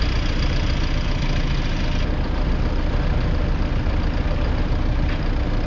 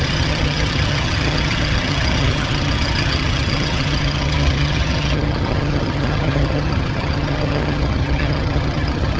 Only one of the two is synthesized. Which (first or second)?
second